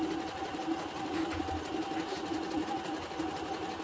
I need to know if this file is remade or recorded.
recorded